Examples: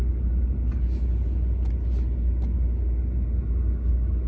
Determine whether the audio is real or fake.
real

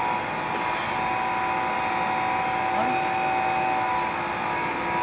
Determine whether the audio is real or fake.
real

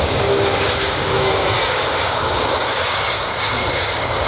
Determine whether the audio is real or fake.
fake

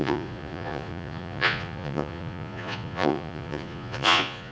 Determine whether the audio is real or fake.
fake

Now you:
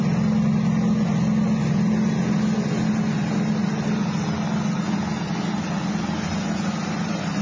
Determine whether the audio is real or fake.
real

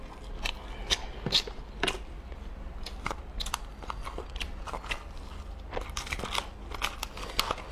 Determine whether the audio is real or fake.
real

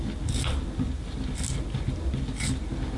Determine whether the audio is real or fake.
real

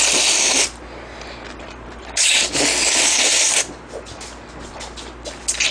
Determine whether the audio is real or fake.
real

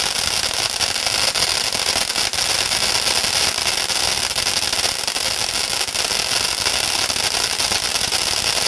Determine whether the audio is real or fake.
real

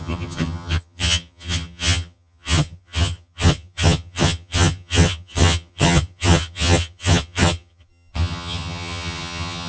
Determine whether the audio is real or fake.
fake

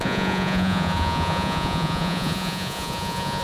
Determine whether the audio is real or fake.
fake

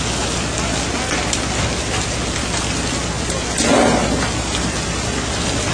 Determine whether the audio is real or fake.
real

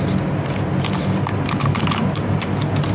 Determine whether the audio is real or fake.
real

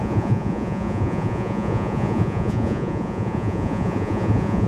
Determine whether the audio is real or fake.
fake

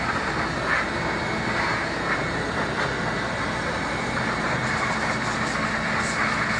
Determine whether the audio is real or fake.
real